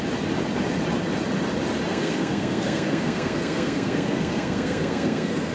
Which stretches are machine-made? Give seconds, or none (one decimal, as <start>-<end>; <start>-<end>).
1.9-5.5